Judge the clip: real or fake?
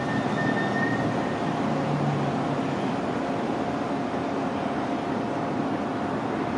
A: real